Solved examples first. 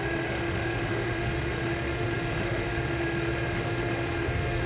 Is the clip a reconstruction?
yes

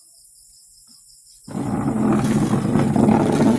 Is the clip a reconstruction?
no